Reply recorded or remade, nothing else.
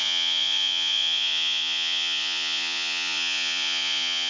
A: remade